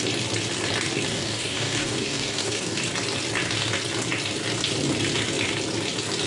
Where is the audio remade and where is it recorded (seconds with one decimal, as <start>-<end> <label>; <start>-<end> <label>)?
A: 0.0-1.1 recorded; 1.1-2.8 remade; 2.8-6.3 recorded